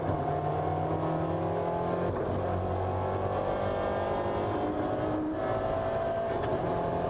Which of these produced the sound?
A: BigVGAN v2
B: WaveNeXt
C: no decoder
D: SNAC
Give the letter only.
C